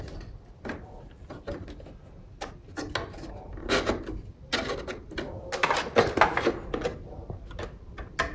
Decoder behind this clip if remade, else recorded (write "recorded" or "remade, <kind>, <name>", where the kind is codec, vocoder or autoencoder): recorded